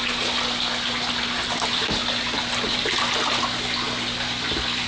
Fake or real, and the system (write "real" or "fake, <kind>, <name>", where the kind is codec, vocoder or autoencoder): real